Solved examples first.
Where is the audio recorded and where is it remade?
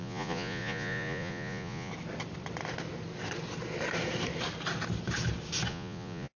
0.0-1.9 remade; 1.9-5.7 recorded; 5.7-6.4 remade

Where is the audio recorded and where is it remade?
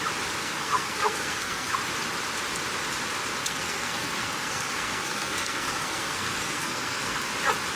0.0-0.4 recorded; 0.4-1.7 remade; 1.7-3.4 recorded; 3.4-7.3 remade; 7.3-7.8 recorded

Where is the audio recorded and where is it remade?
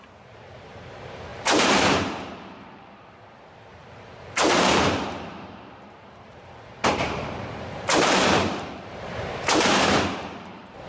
0.0-10.9 remade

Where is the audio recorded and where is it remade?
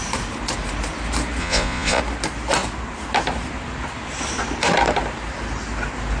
0.0-1.4 recorded; 1.4-2.0 remade; 2.0-6.2 recorded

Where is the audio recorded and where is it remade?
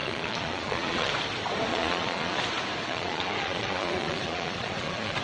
0.0-1.1 remade; 1.1-1.7 recorded; 1.7-2.4 remade; 2.4-2.8 recorded; 2.8-5.2 remade